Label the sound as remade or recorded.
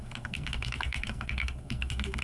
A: remade